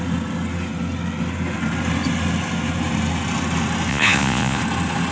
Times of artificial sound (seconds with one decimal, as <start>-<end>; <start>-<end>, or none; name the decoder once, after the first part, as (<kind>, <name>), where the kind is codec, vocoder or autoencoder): 3.9-4.6 (vocoder, Vocos)